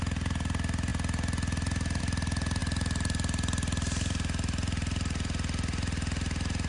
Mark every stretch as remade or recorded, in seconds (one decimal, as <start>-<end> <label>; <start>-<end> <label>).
0.0-2.6 recorded; 2.6-6.7 remade